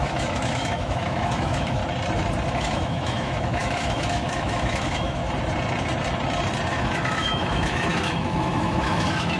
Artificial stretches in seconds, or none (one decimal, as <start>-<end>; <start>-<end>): 0.0-1.8; 2.5-5.2; 6.7-9.4